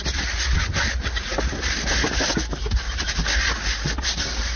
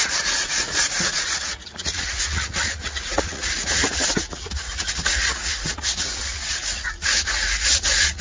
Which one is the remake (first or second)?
second